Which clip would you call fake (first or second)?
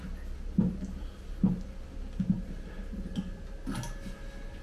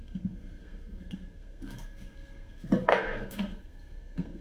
second